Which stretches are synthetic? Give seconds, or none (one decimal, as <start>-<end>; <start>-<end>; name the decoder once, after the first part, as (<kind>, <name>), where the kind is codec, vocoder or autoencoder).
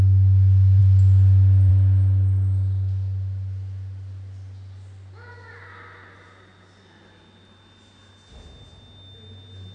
none